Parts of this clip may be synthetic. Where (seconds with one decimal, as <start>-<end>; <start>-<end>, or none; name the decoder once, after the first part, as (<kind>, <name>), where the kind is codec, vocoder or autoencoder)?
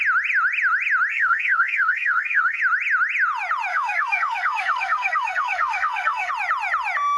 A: 1.1-2.6 (codec, SNAC); 3.7-6.3